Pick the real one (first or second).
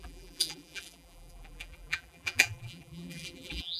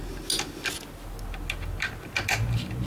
second